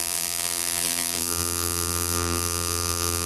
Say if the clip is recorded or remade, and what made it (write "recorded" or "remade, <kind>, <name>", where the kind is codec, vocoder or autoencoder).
remade, vocoder, BigVGAN v2